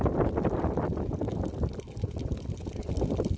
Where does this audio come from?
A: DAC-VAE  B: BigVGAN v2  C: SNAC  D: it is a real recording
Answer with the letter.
D